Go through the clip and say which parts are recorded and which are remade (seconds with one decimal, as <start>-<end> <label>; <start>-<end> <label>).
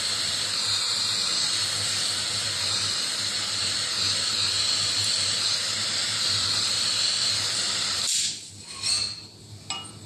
0.0-6.1 recorded; 6.1-8.5 remade; 8.5-10.1 recorded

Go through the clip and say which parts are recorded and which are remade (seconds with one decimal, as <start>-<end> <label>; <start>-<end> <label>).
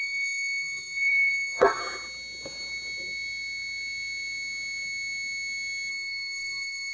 0.0-1.8 remade; 1.8-5.9 recorded; 5.9-6.9 remade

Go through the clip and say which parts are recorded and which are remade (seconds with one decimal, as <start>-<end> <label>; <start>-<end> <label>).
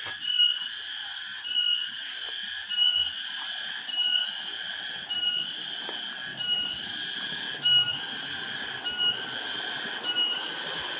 0.0-11.0 recorded